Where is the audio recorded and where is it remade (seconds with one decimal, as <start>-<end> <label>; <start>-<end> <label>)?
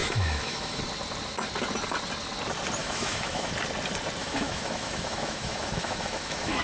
0.0-0.8 remade; 0.8-2.8 recorded; 2.8-3.5 remade; 3.5-4.2 recorded; 4.2-6.6 remade